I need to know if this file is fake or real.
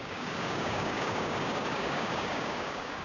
fake